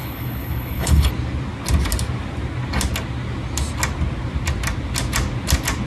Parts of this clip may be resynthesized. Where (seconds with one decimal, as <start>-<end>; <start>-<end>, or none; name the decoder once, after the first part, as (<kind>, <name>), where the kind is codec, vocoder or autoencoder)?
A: 0.0-1.1 (codec, HILCodec)